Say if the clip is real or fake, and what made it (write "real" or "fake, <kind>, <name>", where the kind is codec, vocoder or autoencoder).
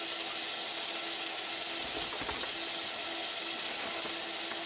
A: real